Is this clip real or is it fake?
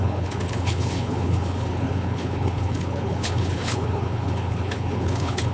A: fake